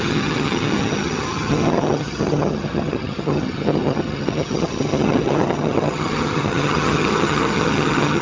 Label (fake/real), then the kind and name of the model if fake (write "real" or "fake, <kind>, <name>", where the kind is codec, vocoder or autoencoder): fake, vocoder, HiFi-GAN